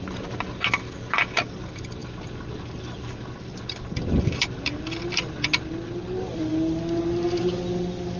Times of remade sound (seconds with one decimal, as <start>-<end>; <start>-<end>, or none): none